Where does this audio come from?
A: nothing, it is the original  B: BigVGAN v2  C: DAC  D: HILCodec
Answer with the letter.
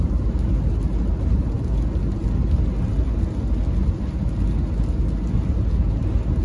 A